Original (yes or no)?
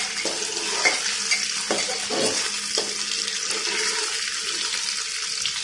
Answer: yes